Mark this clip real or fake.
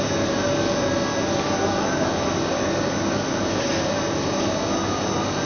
real